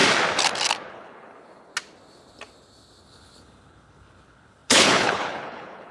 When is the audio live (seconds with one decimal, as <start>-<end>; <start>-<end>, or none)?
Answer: 0.0-0.9; 1.7-3.0